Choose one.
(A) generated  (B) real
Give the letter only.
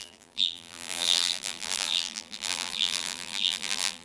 A